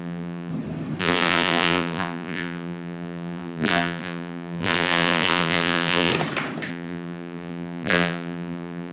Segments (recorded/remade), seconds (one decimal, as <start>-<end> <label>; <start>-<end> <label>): 0.0-0.5 remade; 0.5-1.0 recorded; 1.0-6.1 remade; 6.1-6.7 recorded; 6.7-8.9 remade